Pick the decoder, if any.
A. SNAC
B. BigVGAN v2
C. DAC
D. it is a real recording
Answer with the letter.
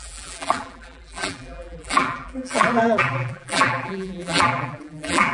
B